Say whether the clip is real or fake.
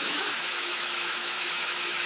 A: fake